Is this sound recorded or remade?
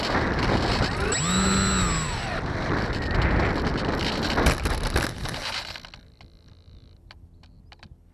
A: recorded